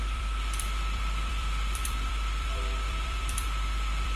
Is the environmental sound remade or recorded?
remade